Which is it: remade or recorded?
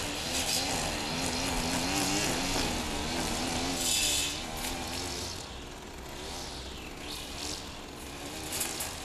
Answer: recorded